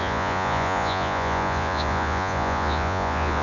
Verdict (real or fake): fake